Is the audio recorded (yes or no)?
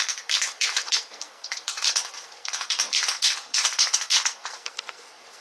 no